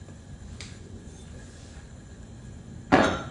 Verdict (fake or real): fake